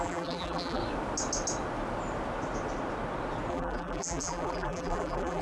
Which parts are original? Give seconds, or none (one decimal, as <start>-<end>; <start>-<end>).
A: 0.8-3.5